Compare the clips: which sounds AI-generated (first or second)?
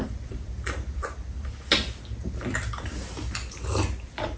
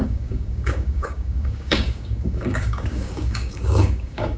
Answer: second